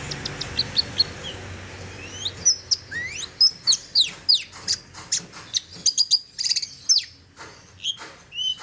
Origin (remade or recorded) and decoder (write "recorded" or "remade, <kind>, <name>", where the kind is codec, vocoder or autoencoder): recorded